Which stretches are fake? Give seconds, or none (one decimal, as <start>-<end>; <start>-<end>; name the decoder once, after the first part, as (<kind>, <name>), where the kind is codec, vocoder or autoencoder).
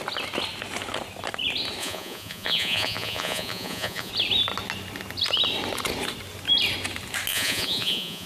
1.8-4.1 (vocoder, Vocos); 7.3-8.3